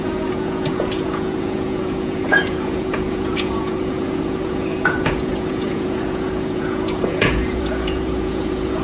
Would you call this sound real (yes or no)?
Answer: no